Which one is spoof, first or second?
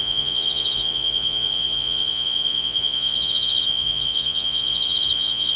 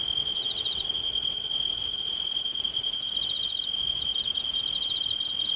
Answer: first